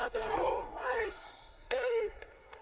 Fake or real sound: fake